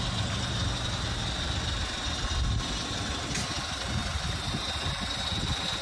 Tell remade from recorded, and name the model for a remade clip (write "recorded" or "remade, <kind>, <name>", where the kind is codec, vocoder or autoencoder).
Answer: recorded